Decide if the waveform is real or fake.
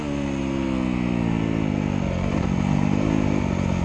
real